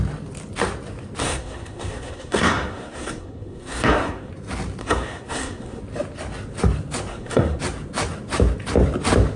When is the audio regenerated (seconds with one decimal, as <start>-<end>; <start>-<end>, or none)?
1.2-4.3; 4.8-5.8; 7.1-7.6